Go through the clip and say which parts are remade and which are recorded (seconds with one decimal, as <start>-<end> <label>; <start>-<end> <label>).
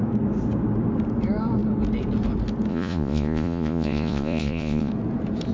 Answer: 0.0-2.7 recorded; 2.7-4.9 remade; 4.9-5.5 recorded